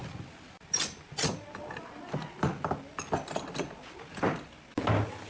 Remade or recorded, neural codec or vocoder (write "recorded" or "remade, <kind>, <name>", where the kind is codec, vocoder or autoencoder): recorded